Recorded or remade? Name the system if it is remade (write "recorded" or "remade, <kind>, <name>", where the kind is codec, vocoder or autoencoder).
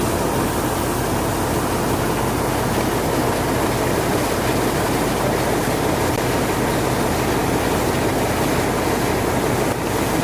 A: recorded